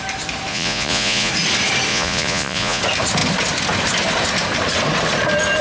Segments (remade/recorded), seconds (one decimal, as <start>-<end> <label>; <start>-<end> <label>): 0.0-0.5 recorded; 0.5-1.3 remade; 1.3-1.9 recorded; 1.9-2.8 remade; 2.8-5.6 recorded